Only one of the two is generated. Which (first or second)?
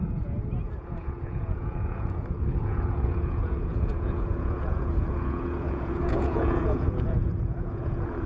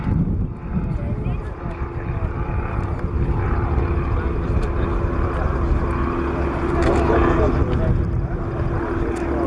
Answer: first